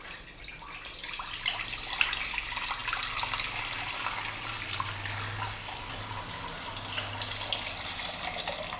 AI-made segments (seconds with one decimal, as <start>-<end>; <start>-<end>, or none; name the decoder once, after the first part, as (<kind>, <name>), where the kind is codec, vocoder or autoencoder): none